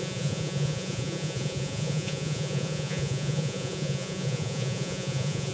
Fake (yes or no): yes